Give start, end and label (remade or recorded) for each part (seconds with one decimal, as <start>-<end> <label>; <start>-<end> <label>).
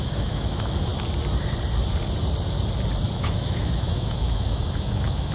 0.0-0.9 remade; 0.9-3.1 recorded; 3.1-5.3 remade